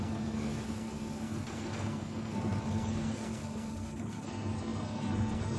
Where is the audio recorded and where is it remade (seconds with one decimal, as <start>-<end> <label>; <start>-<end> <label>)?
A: 0.0-5.6 remade